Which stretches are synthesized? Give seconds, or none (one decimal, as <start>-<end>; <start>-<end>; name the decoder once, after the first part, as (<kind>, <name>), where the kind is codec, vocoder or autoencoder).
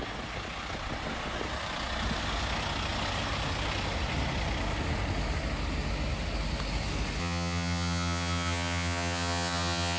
7.2-10.0 (vocoder, HiFi-GAN)